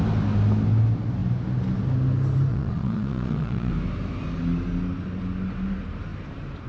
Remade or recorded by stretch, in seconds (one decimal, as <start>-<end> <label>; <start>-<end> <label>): 0.0-2.5 recorded; 2.5-3.7 remade; 3.7-6.7 recorded